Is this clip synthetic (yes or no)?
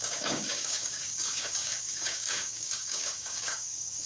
yes